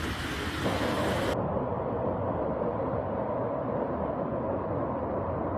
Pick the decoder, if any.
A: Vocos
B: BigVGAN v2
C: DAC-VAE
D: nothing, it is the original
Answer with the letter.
D